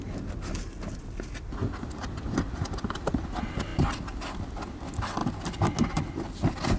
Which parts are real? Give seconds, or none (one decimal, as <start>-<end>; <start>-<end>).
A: 0.0-6.8